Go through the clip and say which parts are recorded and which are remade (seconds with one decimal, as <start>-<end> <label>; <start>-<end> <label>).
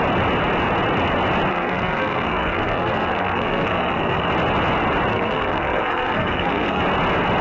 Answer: 0.0-1.5 recorded; 1.5-4.3 remade; 4.3-5.1 recorded; 5.1-6.8 remade; 6.8-7.4 recorded